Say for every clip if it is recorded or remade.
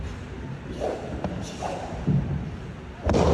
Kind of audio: recorded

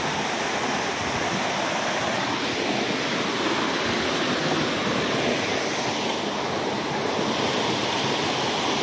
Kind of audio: recorded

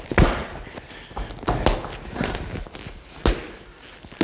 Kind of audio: recorded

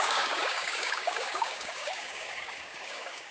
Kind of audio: remade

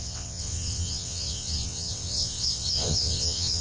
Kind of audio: remade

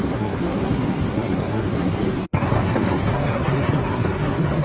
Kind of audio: remade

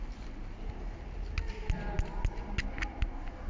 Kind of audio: recorded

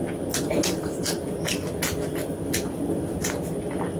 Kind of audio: recorded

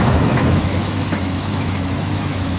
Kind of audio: remade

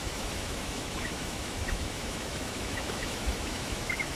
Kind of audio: remade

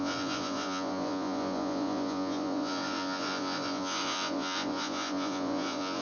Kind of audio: remade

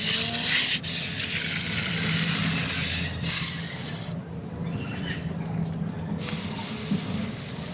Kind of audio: recorded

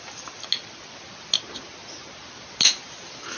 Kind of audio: recorded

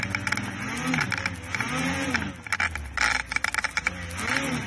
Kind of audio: recorded